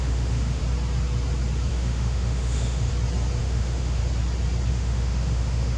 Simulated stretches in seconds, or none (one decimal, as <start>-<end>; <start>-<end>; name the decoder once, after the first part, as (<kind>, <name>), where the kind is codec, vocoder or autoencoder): 0.0-0.6 (autoencoder, DAC-VAE); 1.7-2.9; 3.4-4.0; 4.7-5.8